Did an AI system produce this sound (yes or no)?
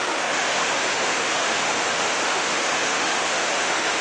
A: yes